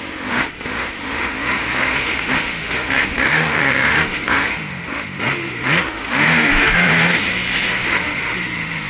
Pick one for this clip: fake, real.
fake